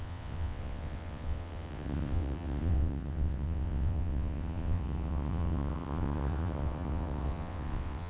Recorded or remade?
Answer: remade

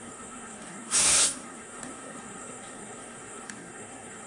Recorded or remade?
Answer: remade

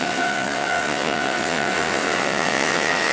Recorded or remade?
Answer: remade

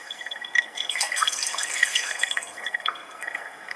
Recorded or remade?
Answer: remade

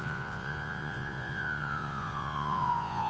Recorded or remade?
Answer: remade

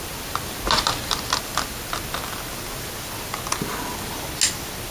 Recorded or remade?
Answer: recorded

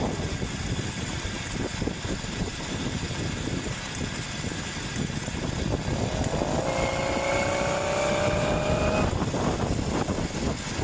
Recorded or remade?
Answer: recorded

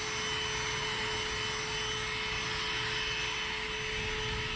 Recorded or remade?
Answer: recorded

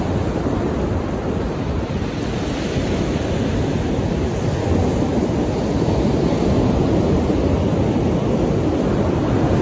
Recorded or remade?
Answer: recorded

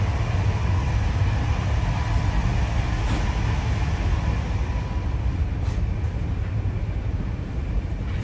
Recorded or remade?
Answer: recorded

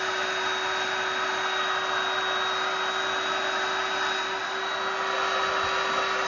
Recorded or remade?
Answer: recorded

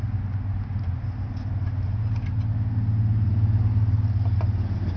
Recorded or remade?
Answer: recorded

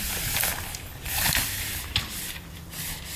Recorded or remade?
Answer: recorded